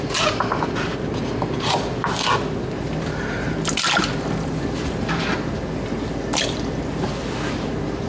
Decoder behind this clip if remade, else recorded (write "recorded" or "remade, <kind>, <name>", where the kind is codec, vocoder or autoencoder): recorded